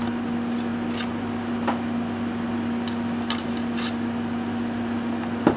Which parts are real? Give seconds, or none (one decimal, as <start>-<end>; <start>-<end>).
0.0-5.6